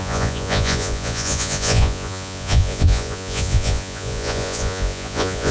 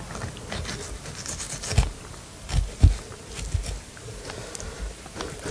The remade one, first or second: first